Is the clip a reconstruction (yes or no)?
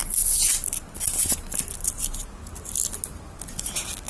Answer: no